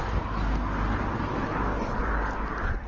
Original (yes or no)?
yes